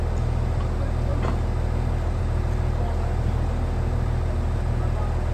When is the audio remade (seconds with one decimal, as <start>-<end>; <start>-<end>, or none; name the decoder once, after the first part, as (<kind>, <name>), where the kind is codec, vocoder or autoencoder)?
none